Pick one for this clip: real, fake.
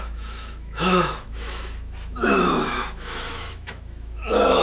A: fake